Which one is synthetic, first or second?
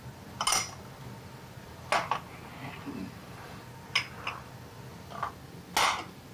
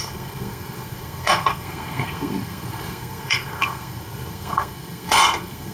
second